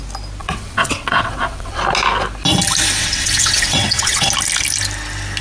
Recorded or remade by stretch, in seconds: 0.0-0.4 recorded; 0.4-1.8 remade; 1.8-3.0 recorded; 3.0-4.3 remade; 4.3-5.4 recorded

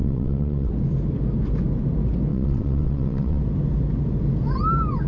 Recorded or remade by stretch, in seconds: 0.0-0.7 remade; 0.7-2.3 recorded; 2.3-3.4 remade; 3.4-5.1 recorded

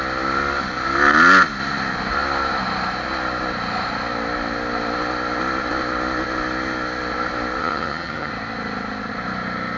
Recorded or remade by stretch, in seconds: 0.0-7.6 recorded; 7.6-8.3 remade; 8.3-9.8 recorded

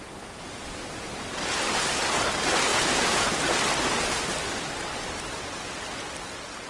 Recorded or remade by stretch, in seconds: 0.0-2.7 recorded; 2.7-3.3 remade; 3.3-6.7 recorded

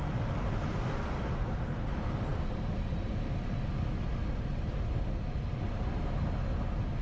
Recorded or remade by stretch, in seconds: 0.0-7.0 recorded

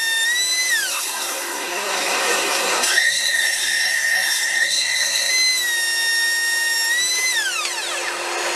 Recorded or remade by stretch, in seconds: 0.0-0.9 recorded; 0.9-5.3 remade; 5.3-8.6 recorded

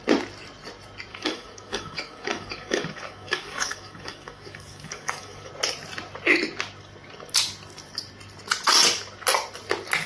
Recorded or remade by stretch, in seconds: 0.0-1.1 recorded; 1.1-5.5 remade; 5.5-10.1 recorded